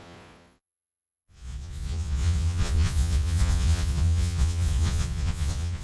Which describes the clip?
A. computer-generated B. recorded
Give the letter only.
A